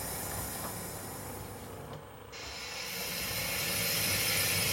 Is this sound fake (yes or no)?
no